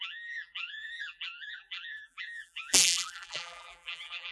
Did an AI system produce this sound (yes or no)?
yes